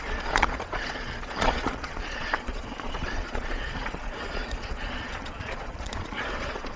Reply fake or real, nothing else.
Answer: fake